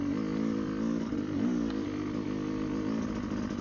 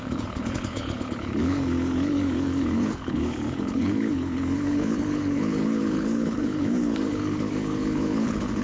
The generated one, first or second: second